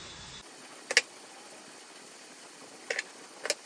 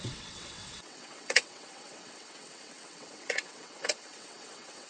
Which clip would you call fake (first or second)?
second